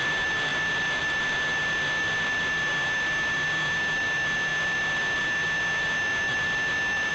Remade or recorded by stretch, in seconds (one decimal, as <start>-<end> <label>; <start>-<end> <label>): 0.0-7.1 recorded